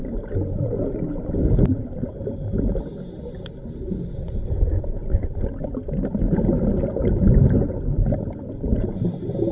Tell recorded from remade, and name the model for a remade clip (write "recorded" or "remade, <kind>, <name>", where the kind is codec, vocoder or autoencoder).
recorded